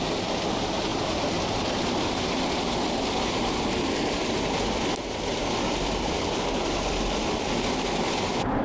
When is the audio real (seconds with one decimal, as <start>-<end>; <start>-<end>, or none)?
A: 0.0-8.6